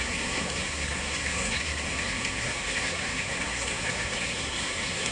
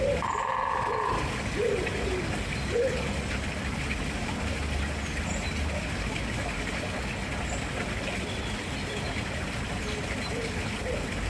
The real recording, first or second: second